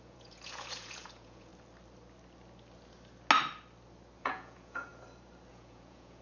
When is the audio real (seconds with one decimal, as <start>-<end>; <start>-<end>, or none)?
1.5-4.2; 4.9-5.5